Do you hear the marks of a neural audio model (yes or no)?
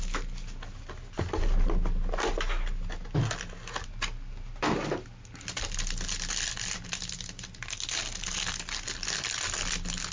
no